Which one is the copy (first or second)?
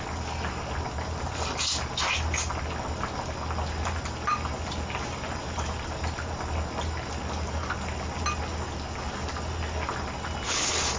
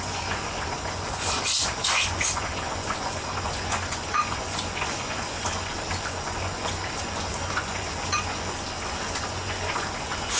second